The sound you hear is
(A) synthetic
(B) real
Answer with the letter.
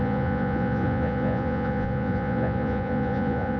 A